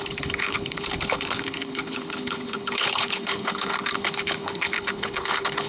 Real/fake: fake